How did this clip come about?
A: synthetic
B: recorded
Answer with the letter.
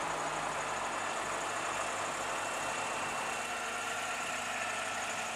B